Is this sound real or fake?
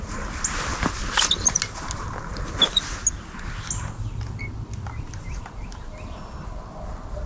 real